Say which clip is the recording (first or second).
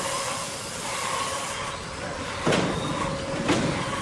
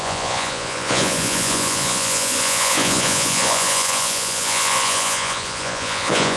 first